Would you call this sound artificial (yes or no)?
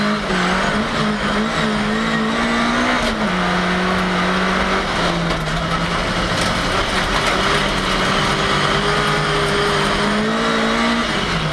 no